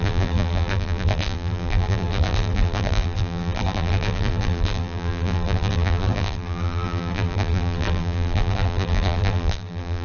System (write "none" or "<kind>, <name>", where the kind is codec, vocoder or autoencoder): vocoder, BigVGAN v2